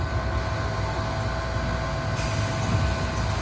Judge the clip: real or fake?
real